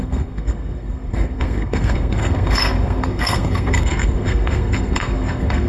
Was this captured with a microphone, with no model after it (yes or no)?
no